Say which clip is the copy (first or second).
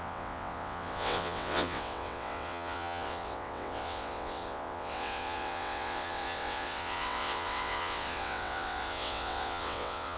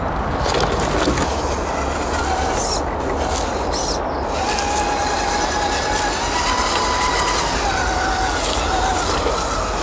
first